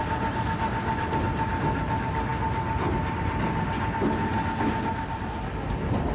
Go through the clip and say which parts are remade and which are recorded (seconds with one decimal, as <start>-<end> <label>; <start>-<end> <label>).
0.0-6.1 recorded